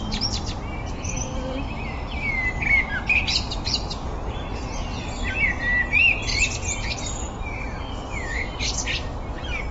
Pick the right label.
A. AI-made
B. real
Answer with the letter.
B